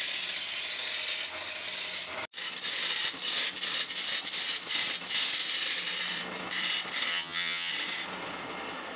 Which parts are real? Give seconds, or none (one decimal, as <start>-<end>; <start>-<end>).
0.0-7.1; 7.7-9.0